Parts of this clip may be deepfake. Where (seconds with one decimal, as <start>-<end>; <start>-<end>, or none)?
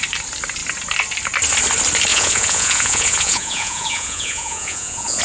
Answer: 2.1-5.2